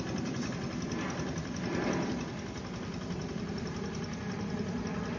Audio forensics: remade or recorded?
recorded